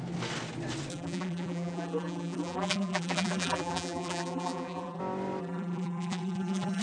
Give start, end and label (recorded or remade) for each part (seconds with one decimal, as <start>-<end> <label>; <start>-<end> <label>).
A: 0.0-0.9 recorded; 0.9-5.0 remade; 5.0-5.4 recorded; 5.4-6.8 remade